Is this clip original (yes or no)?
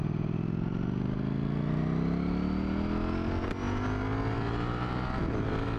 yes